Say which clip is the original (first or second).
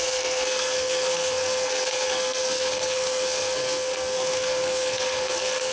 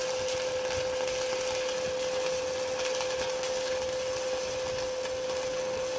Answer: second